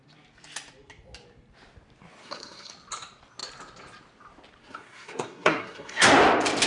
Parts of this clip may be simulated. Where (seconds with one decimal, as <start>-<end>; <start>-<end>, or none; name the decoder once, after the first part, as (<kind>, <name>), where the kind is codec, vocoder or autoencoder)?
2.2-2.7 (codec, SNAC); 4.6-6.2